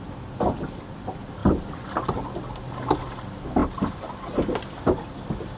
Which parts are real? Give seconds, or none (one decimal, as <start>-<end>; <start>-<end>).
0.0-5.6

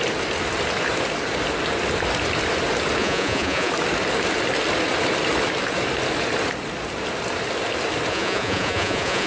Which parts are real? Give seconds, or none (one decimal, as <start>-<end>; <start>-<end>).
0.0-3.0; 3.7-8.1

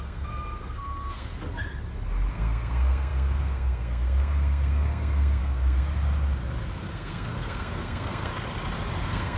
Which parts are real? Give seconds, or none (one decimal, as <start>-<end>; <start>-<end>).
1.3-2.3; 5.9-6.9; 8.3-9.0

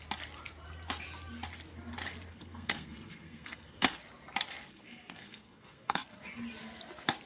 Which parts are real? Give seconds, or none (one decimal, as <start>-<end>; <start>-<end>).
0.0-2.3; 4.0-4.7; 6.2-7.3